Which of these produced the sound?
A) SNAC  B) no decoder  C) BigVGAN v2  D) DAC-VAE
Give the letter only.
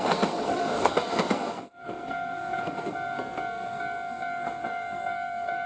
A